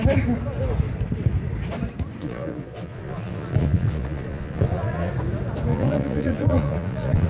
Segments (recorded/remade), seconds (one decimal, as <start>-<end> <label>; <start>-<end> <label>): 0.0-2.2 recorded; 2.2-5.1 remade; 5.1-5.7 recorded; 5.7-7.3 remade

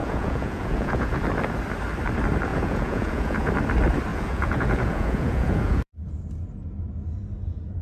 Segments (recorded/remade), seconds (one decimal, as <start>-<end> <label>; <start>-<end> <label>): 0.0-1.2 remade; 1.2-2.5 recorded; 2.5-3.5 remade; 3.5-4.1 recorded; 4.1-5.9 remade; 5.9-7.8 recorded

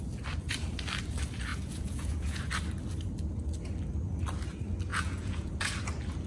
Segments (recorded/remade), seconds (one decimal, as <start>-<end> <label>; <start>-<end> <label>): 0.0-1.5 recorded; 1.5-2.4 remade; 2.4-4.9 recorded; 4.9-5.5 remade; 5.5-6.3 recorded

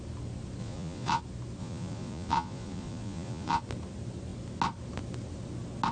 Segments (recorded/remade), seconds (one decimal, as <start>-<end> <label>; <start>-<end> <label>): 0.0-0.6 recorded; 0.6-1.2 remade; 1.2-1.6 recorded; 1.6-3.6 remade; 3.6-5.9 recorded

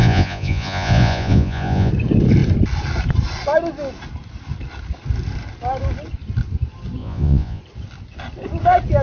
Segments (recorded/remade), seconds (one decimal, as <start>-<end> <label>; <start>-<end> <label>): 0.0-1.9 remade; 1.9-7.0 recorded; 7.0-7.6 remade; 7.6-9.0 recorded

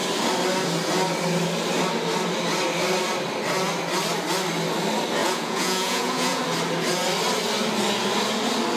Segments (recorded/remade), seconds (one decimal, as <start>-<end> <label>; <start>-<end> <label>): 0.0-5.2 recorded; 5.2-6.4 remade; 6.4-8.8 recorded